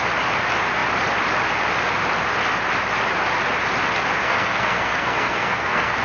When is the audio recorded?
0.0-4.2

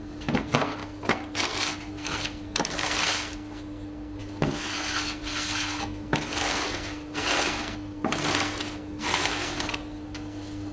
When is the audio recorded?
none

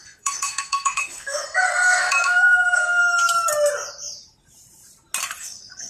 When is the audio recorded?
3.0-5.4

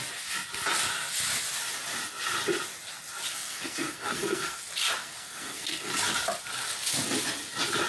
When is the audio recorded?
0.0-3.3; 4.6-5.0; 5.9-7.9